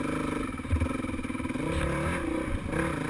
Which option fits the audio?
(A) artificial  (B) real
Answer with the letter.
B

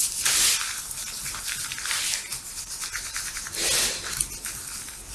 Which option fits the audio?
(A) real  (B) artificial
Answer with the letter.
A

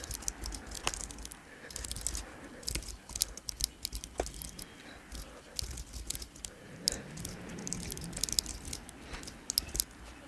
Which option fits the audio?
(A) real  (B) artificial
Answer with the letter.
A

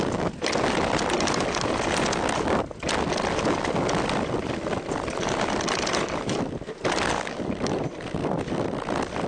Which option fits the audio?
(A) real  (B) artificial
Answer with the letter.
A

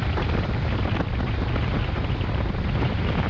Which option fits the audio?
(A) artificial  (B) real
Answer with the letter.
B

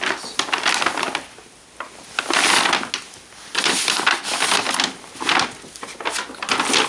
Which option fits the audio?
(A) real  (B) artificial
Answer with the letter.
A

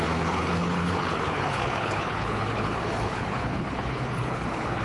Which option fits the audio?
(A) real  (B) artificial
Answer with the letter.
B